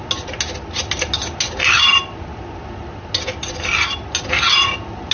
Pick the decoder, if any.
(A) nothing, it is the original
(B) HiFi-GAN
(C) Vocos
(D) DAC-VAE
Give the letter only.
A